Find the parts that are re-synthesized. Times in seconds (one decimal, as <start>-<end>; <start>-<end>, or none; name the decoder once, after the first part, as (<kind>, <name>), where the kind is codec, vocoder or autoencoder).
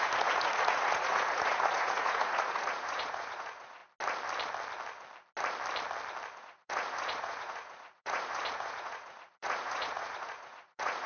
0.0-3.8 (vocoder, Vocos); 6.4-11.1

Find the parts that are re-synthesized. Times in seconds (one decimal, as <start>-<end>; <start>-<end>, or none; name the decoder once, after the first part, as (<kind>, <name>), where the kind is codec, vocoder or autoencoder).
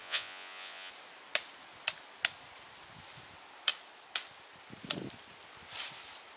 0.0-0.9 (vocoder, Vocos)